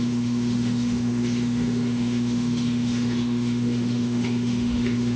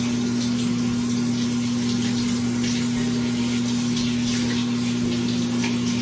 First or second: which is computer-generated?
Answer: first